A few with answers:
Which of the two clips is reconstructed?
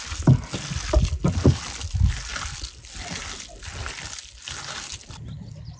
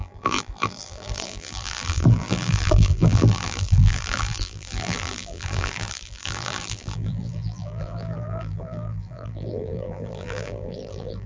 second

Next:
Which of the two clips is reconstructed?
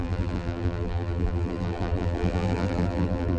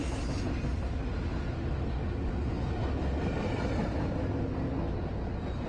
first